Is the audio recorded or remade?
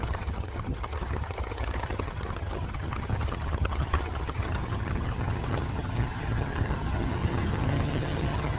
remade